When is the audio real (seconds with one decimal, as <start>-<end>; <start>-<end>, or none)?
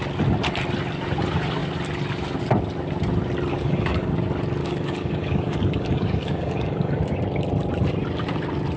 0.0-3.5; 4.1-4.6; 7.0-8.8